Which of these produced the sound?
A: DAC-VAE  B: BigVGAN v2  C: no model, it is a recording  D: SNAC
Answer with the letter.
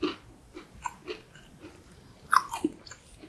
C